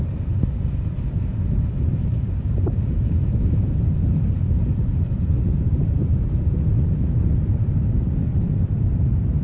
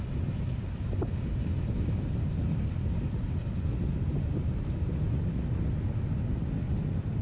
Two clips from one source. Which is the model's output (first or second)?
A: first